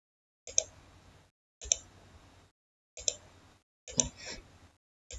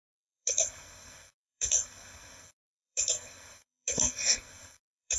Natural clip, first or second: first